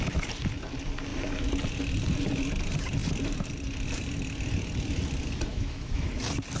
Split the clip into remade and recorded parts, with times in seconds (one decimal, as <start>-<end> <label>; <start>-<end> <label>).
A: 0.0-5.5 recorded; 5.5-6.1 remade; 6.1-6.6 recorded